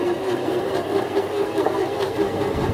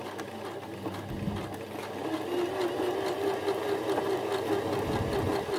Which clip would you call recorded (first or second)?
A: second